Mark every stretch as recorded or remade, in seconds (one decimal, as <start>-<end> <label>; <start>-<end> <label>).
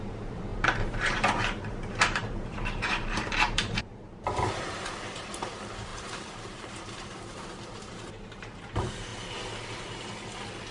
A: 0.0-9.1 remade; 9.1-10.7 recorded